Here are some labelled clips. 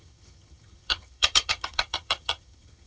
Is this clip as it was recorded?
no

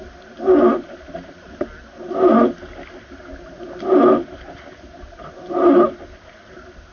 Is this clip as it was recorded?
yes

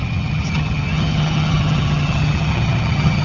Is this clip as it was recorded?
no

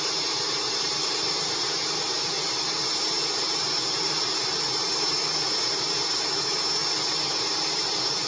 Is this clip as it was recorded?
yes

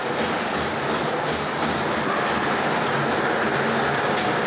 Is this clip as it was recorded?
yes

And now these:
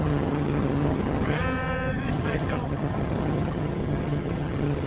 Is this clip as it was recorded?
no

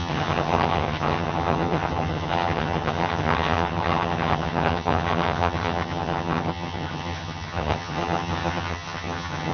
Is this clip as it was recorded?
no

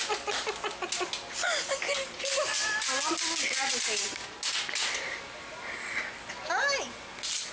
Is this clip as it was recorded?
yes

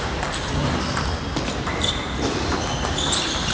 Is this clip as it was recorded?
yes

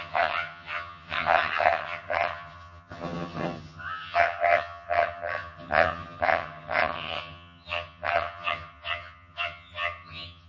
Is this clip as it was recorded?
no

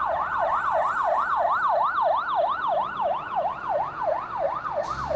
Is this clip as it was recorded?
yes